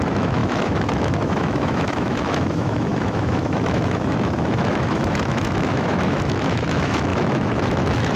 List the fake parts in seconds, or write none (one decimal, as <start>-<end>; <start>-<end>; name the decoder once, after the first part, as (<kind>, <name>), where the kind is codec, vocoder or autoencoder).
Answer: 0.0-8.2 (autoencoder, DAC-VAE)